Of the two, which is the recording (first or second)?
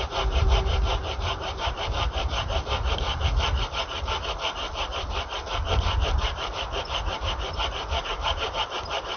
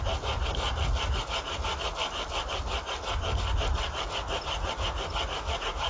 second